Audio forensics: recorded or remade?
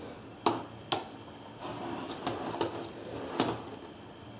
recorded